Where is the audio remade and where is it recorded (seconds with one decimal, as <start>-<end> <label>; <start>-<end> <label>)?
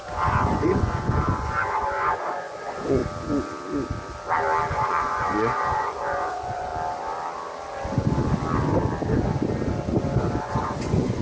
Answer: 0.0-3.0 remade; 3.0-4.7 recorded; 4.7-6.7 remade; 6.7-10.4 recorded; 10.4-11.2 remade